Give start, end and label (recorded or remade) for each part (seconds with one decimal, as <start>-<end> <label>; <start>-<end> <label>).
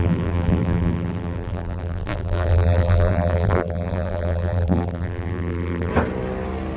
0.0-5.9 remade; 5.9-6.8 recorded